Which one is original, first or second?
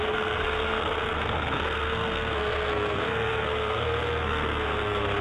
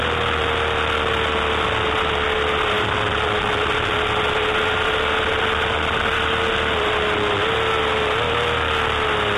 second